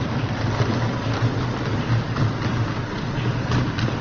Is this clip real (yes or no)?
yes